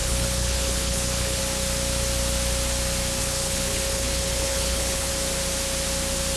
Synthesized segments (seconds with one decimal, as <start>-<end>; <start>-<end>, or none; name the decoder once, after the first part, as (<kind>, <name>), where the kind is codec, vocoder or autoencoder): 0.0-1.4 (codec, HILCodec); 3.2-5.1